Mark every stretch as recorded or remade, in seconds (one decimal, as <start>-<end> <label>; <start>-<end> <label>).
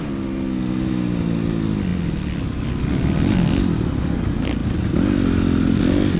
0.0-6.2 recorded